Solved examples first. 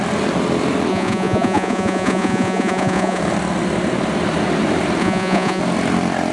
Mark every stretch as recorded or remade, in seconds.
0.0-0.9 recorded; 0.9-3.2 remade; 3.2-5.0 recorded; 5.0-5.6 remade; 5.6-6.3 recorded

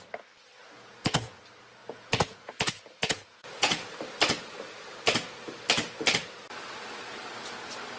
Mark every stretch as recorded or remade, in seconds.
0.0-0.6 recorded; 0.6-1.4 remade; 1.4-1.8 recorded; 1.8-3.9 remade; 3.9-8.0 recorded

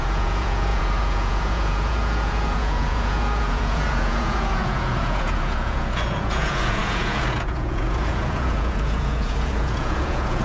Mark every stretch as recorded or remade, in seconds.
0.0-10.4 remade

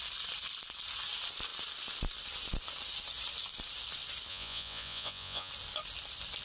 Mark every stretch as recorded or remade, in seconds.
0.0-4.3 recorded; 4.3-5.5 remade; 5.5-6.4 recorded

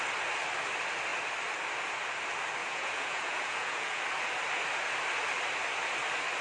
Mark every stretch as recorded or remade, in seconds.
0.0-2.6 recorded; 2.6-4.0 remade; 4.0-6.4 recorded